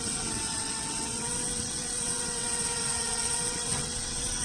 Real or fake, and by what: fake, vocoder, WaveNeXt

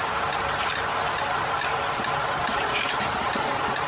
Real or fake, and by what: real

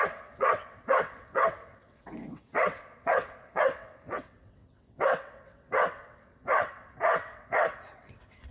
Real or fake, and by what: fake, vocoder, WaveNeXt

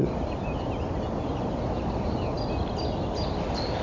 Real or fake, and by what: real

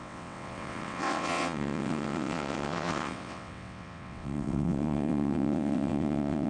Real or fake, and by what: fake, vocoder, WaveNeXt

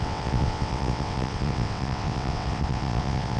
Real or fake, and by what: fake, vocoder, WaveNeXt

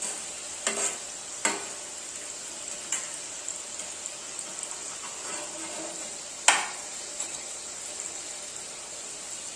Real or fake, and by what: real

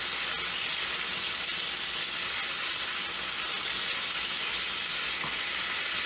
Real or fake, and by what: real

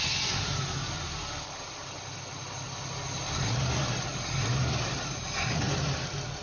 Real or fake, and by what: real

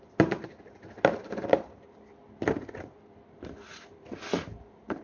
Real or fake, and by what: real